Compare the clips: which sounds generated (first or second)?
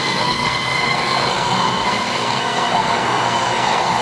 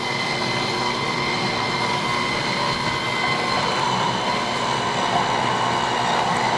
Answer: first